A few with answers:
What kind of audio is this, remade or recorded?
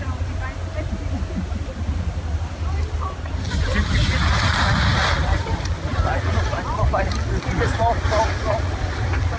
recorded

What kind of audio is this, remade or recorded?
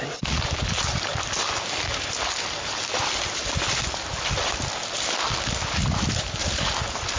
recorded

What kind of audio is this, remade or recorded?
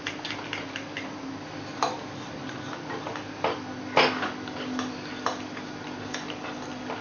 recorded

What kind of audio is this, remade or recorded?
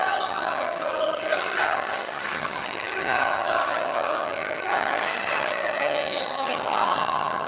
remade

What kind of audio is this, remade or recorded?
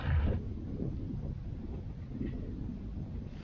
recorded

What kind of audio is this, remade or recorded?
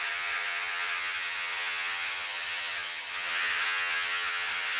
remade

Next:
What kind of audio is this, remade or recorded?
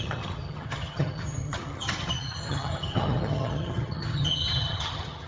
remade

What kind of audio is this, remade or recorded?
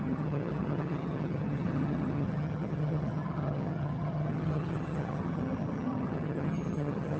remade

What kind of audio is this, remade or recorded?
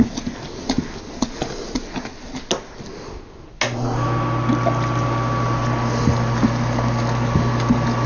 recorded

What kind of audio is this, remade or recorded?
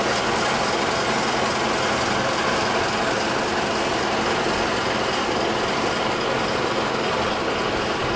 recorded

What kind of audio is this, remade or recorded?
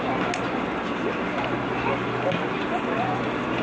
recorded